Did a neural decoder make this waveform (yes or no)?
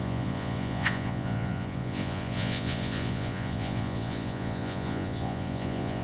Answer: yes